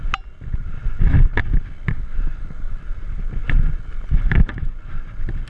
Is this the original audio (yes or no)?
yes